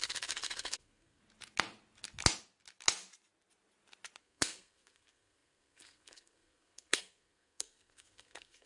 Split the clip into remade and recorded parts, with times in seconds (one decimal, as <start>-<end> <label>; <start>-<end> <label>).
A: 0.0-1.2 remade; 1.2-4.2 recorded; 4.2-8.7 remade

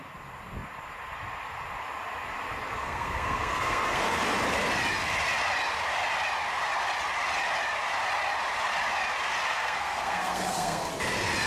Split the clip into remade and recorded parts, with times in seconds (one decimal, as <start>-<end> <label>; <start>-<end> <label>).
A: 0.0-2.8 recorded; 2.8-4.2 remade; 4.2-9.5 recorded; 9.5-10.9 remade; 10.9-11.5 recorded

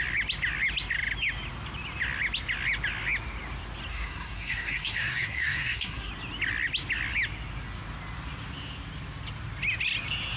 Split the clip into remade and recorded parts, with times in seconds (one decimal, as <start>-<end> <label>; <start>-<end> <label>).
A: 0.0-3.9 recorded; 3.9-6.1 remade; 6.1-10.4 recorded